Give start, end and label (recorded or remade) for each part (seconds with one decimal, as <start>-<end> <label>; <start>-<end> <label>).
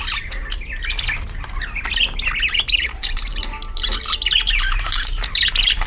0.0-0.4 remade; 0.4-2.5 recorded; 2.5-5.9 remade